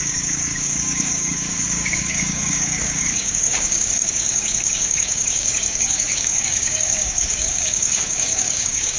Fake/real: fake